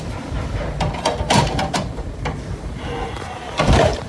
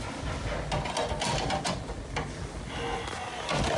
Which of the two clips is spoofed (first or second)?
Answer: first